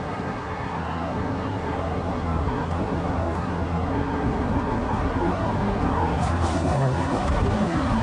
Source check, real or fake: fake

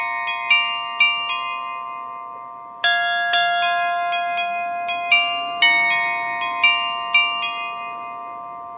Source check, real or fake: real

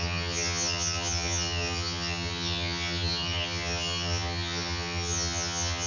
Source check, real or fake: fake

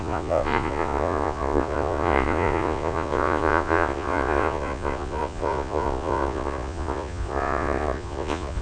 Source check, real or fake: fake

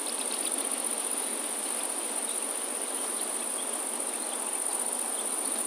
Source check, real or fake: real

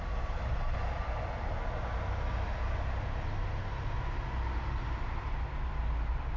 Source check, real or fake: real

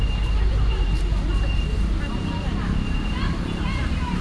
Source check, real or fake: fake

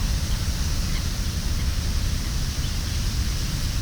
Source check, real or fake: fake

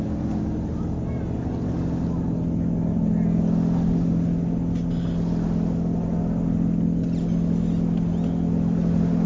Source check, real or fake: real